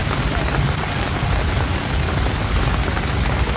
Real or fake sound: real